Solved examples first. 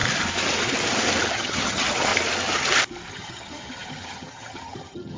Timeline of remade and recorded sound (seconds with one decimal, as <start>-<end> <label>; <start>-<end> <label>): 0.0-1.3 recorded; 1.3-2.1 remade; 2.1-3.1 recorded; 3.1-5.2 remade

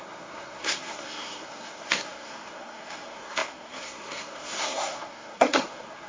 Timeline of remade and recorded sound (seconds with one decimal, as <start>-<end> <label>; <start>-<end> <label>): 0.0-6.1 remade

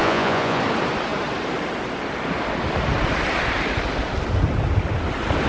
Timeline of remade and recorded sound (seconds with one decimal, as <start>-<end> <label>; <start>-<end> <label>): 0.0-0.6 remade; 0.6-5.5 recorded

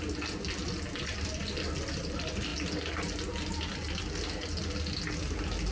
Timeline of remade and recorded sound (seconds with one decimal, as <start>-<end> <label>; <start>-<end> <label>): 0.0-5.7 recorded